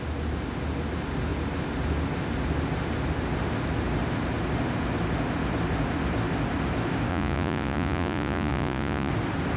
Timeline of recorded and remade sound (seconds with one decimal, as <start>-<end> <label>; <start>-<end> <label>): 0.0-7.1 recorded; 7.1-9.1 remade; 9.1-9.6 recorded